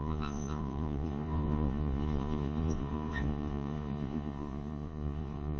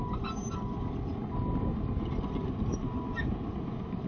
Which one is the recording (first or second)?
second